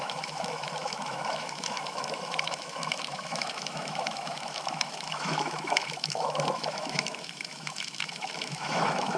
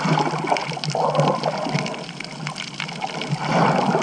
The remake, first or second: first